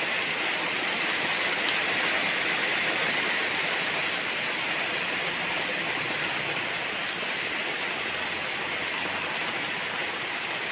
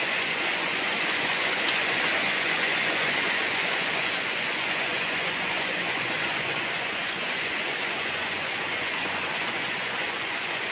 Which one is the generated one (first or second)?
second